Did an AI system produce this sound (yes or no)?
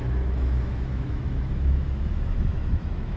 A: yes